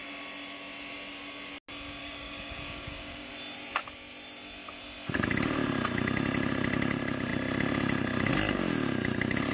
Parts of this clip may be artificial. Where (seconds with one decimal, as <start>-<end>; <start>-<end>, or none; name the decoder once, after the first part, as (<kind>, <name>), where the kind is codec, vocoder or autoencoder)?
2.0-3.3 (codec, DAC)